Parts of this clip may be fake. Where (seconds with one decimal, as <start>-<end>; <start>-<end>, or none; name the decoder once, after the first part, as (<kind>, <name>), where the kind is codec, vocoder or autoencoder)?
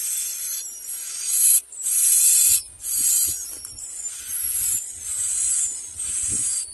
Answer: none